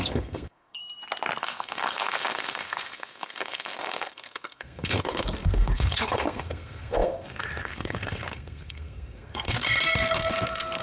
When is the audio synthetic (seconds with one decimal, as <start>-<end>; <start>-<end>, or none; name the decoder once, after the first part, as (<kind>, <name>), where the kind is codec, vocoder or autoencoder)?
0.0-0.8 (codec, SNAC); 1.4-10.8